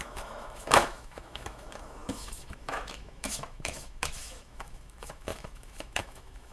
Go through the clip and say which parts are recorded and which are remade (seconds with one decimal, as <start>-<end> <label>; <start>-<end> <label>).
0.0-6.5 remade